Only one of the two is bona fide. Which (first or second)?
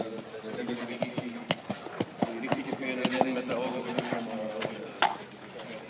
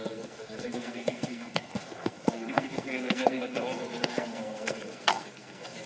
first